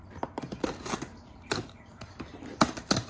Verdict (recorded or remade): remade